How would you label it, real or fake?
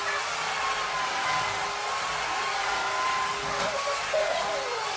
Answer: real